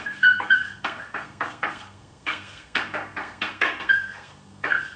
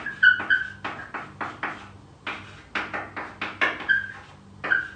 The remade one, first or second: first